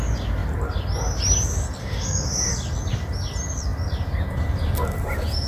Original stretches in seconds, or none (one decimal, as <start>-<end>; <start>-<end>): 0.0-1.8; 2.5-5.5